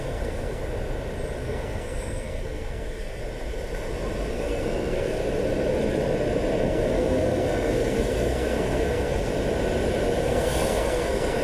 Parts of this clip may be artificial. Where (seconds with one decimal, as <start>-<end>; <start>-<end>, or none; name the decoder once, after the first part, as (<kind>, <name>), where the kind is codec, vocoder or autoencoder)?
0.0-0.6 (codec, SNAC); 1.4-3.2; 4.3-5.2; 6.6-9.3; 10.2-11.4